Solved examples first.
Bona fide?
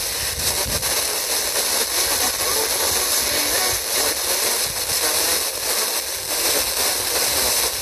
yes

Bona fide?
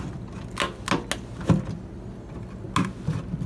yes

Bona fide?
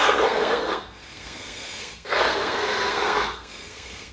no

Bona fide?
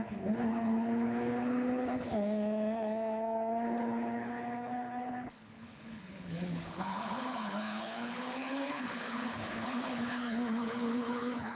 no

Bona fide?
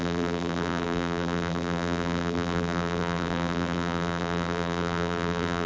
no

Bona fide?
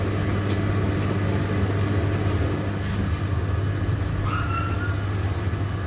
yes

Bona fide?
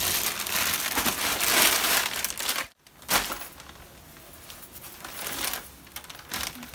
yes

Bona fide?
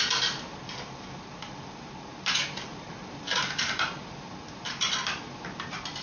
yes